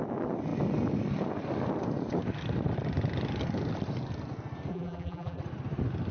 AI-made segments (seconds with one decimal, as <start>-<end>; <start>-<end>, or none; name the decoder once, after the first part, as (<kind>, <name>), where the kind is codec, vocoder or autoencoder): 4.7-5.4 (vocoder, BigVGAN v2)

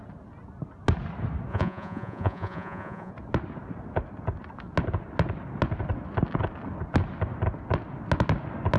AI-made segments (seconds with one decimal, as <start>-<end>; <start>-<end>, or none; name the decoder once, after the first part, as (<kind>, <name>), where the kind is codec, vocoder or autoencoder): 1.5-3.1 (vocoder, Vocos)